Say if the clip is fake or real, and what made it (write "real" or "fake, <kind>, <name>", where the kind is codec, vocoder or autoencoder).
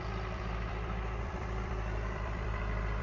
fake, vocoder, BigVGAN v2